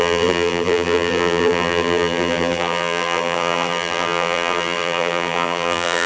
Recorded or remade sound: remade